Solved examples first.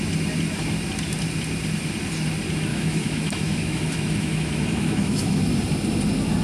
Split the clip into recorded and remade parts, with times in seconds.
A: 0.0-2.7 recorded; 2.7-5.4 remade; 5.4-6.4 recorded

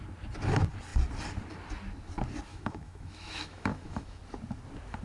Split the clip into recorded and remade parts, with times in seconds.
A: 0.0-2.5 recorded; 2.5-4.2 remade; 4.2-5.0 recorded

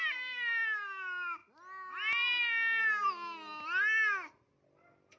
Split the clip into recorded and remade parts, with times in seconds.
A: 0.0-5.2 recorded

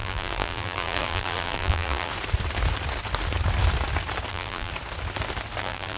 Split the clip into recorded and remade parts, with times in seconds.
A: 0.0-2.1 remade; 2.1-4.3 recorded; 4.3-4.7 remade; 4.7-5.6 recorded; 5.6-6.0 remade

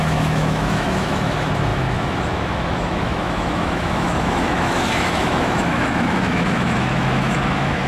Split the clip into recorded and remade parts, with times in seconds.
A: 0.0-7.9 remade

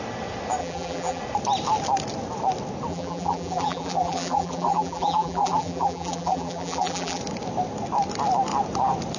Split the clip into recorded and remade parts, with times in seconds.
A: 0.0-0.6 recorded; 0.6-1.2 remade; 1.2-2.9 recorded; 2.9-7.2 remade; 7.2-9.2 recorded

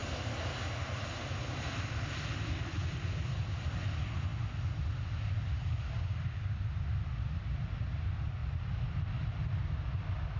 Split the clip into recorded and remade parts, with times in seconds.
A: 0.0-10.4 recorded

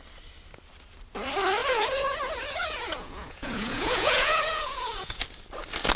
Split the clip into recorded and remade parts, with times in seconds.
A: 0.0-1.6 recorded; 1.6-5.2 remade; 5.2-6.0 recorded